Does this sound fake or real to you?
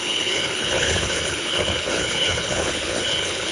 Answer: fake